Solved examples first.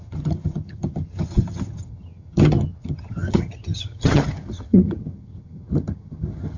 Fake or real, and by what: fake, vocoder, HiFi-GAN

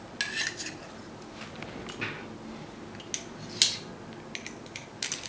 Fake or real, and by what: real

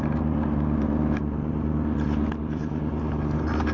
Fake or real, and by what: real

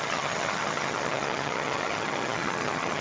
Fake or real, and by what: fake, vocoder, HiFi-GAN